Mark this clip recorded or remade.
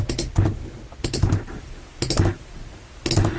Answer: recorded